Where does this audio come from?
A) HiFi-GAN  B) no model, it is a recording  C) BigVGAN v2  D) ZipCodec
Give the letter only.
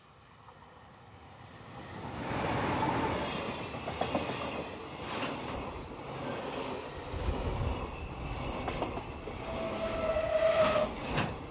B